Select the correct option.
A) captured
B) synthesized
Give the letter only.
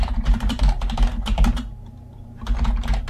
B